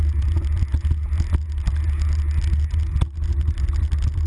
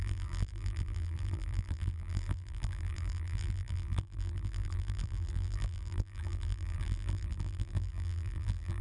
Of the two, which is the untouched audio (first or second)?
first